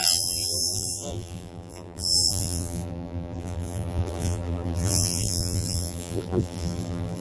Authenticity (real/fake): fake